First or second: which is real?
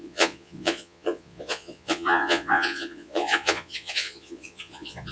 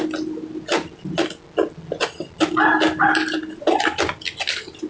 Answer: second